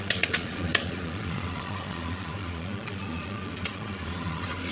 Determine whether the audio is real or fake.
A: fake